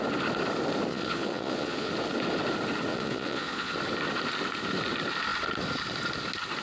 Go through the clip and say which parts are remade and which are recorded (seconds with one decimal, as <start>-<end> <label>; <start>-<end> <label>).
0.0-0.9 recorded; 0.9-1.9 remade; 1.9-2.9 recorded; 2.9-3.7 remade; 3.7-6.6 recorded

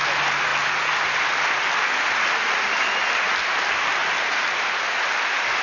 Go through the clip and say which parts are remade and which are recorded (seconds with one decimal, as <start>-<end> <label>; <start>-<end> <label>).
0.0-4.0 recorded; 4.0-4.5 remade; 4.5-5.6 recorded

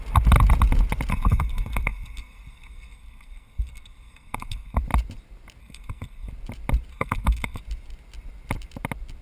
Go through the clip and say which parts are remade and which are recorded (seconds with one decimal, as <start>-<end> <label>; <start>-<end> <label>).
0.0-1.1 recorded; 1.1-4.8 remade; 4.8-5.6 recorded; 5.6-6.3 remade; 6.3-6.9 recorded; 6.9-7.6 remade; 7.6-9.2 recorded

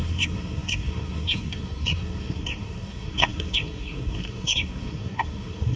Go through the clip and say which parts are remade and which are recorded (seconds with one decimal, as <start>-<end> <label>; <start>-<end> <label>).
0.0-5.8 remade

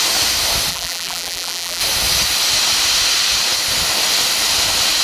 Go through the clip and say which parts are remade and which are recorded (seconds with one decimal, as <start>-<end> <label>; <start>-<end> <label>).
0.0-0.7 recorded; 0.7-1.8 remade; 1.8-5.0 recorded

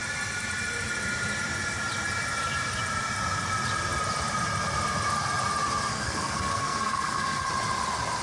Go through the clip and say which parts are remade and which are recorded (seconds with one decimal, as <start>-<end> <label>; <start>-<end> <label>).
0.0-5.9 recorded; 5.9-7.5 remade; 7.5-8.2 recorded

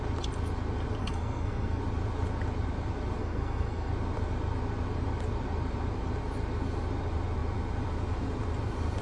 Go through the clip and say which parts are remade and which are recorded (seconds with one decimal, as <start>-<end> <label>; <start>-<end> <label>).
0.0-1.0 recorded; 1.0-1.8 remade; 1.8-3.2 recorded; 3.2-3.9 remade; 3.9-9.0 recorded

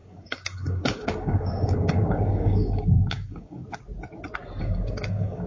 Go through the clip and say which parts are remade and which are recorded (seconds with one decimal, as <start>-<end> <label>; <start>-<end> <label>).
0.0-3.6 remade; 3.6-4.6 recorded; 4.6-5.5 remade